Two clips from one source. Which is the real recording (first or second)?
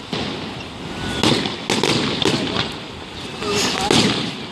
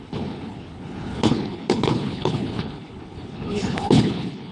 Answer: first